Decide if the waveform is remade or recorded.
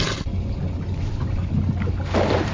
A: recorded